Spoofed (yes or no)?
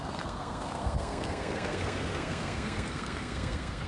yes